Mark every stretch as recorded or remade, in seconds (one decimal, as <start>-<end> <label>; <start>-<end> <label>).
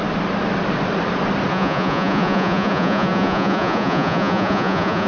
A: 0.0-1.5 recorded; 1.5-5.1 remade